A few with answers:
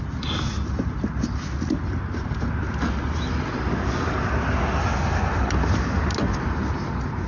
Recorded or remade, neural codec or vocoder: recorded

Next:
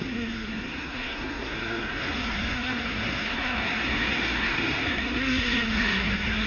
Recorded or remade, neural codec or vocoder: remade, codec, SNAC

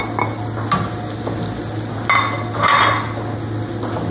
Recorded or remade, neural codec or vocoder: recorded